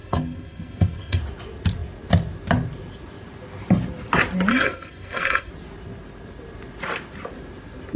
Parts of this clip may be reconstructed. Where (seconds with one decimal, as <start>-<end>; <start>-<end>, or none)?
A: 0.0-1.2; 4.5-5.5